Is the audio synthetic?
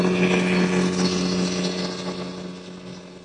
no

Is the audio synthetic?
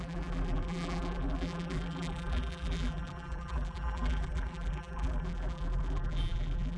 yes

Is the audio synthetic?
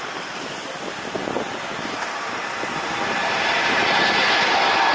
yes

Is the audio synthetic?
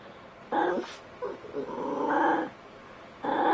no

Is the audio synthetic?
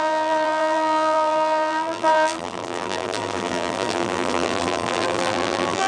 yes